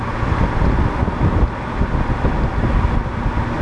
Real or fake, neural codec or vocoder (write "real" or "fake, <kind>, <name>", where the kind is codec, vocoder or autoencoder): real